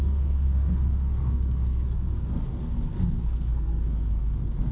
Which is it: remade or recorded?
remade